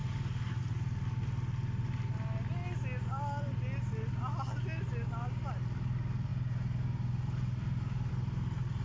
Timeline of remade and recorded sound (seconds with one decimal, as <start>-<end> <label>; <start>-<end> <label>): 0.0-8.8 recorded